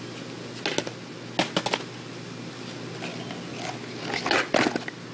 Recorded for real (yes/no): yes